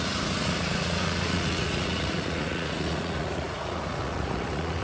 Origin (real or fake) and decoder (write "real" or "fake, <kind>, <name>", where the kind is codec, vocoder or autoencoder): fake, vocoder, Vocos